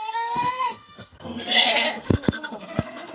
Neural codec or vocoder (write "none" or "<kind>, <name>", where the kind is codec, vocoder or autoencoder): codec, SNAC